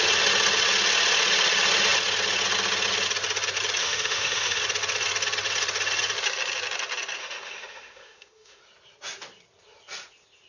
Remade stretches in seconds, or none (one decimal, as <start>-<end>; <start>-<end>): 3.8-4.6; 7.2-8.6

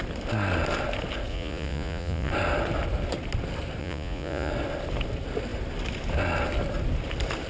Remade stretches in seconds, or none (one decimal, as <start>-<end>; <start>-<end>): 1.3-2.3; 3.8-4.5

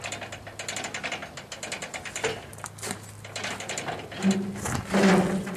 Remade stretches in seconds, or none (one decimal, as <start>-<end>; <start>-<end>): none

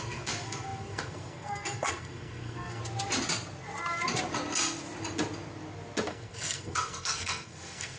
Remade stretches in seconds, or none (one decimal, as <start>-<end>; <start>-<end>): 0.0-2.8; 6.1-8.0

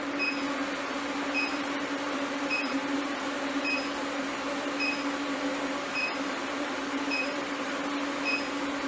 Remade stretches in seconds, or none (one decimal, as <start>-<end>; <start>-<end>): 1.5-3.6; 6.4-7.6

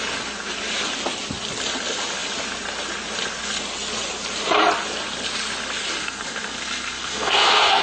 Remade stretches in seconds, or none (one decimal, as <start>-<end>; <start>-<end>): 6.0-7.8